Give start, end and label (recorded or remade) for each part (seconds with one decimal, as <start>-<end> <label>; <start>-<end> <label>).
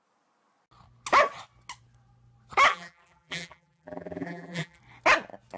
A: 0.0-2.7 recorded; 2.7-4.8 remade; 4.8-5.6 recorded